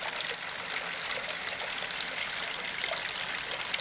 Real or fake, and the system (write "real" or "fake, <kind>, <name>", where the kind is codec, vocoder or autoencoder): real